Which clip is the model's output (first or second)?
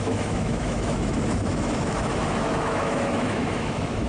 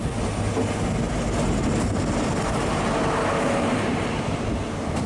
first